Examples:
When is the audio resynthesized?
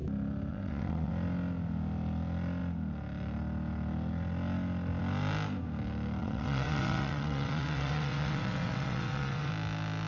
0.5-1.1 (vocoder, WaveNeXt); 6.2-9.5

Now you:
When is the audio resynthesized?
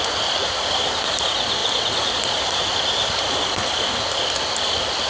none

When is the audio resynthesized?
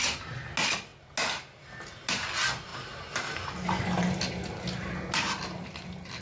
none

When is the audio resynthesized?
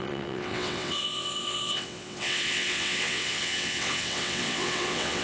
0.0-5.2 (vocoder, WaveNeXt)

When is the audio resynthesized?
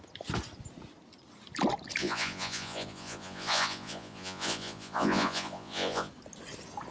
2.0-6.1 (vocoder, Vocos)